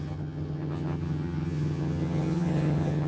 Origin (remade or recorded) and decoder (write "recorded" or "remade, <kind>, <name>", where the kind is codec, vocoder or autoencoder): remade, vocoder, HiFi-GAN